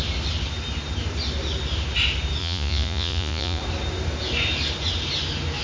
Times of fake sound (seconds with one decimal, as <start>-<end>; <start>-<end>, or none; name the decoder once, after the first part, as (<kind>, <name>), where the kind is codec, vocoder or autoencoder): 2.4-3.6 (vocoder, Vocos)